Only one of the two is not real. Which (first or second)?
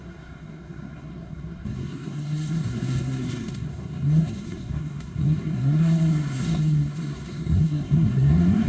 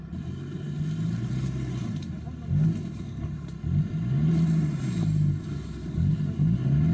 first